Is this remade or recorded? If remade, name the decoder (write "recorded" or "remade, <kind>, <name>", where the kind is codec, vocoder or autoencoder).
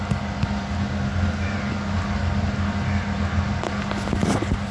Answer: recorded